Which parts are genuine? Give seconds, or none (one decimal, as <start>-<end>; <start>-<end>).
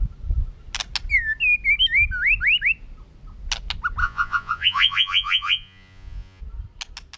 0.0-4.0; 6.4-7.2